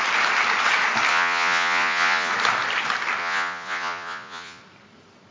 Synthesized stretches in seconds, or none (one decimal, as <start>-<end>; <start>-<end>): 1.1-2.3; 3.2-4.6

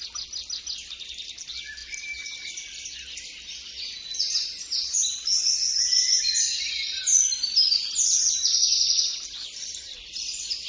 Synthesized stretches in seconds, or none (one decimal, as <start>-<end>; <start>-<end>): none